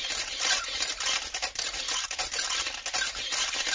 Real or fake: real